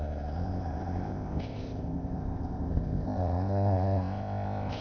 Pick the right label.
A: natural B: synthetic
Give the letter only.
B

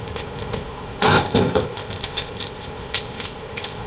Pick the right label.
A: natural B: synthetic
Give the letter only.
B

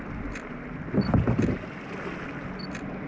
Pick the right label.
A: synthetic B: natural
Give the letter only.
B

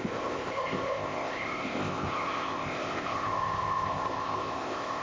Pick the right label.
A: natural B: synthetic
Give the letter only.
B